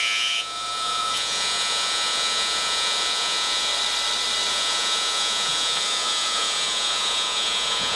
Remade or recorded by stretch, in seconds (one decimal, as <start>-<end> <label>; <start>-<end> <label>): 0.0-3.7 remade; 3.7-4.5 recorded; 4.5-8.0 remade